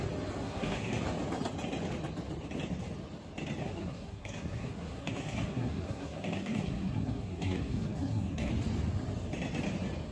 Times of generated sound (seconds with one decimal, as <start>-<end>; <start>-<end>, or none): 0.4-1.0; 3.6-8.5